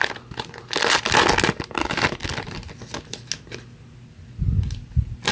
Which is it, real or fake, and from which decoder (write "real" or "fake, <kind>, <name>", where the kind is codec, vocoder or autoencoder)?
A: real